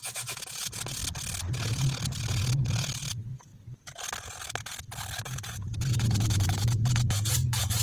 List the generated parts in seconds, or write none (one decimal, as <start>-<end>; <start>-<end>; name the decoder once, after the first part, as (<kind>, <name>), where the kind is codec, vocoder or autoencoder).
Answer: 0.0-1.0 (vocoder, Vocos); 1.5-3.5; 5.2-7.8